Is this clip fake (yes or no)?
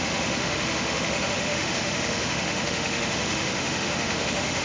yes